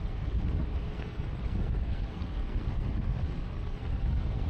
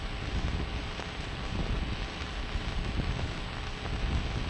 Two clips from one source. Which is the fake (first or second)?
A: first